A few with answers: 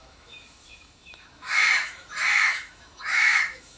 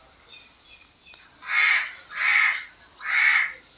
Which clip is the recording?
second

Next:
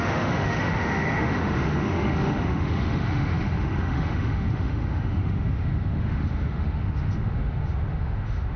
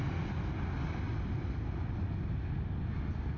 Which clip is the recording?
second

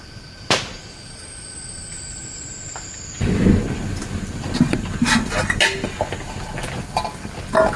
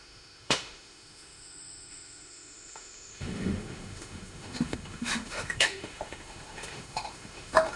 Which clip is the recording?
first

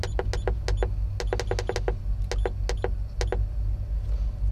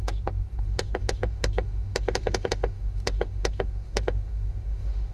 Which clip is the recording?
first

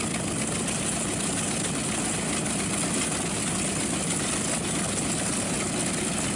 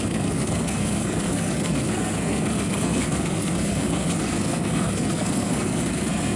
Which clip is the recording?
first